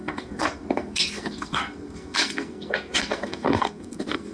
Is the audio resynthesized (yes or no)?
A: yes